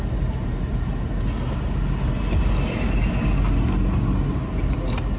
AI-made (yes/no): no